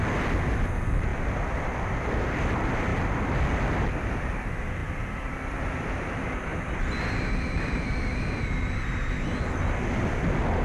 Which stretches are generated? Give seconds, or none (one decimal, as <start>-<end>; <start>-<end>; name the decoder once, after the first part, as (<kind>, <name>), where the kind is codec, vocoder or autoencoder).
1.1-2.2 (vocoder, BigVGAN v2); 2.9-3.8; 4.8-5.6; 6.5-9.0